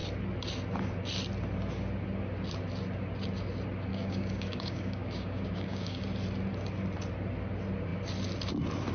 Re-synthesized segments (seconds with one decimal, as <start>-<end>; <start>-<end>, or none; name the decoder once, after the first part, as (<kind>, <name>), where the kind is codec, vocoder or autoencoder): 3.9-6.0 (codec, DAC)